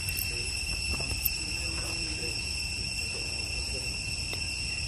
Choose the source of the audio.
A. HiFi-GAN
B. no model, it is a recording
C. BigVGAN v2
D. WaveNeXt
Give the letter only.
B